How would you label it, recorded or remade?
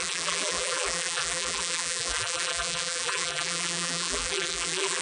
remade